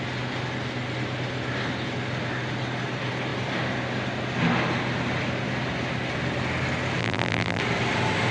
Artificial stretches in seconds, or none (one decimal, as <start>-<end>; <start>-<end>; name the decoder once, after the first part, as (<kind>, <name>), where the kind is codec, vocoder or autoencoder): 7.0-7.6 (vocoder, BigVGAN v2)